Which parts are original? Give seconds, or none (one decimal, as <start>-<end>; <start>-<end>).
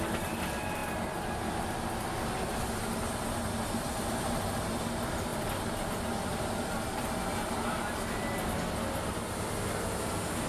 0.0-10.5